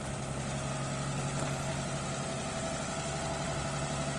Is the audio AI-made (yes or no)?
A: no